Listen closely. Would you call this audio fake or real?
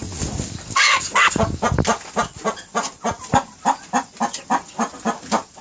real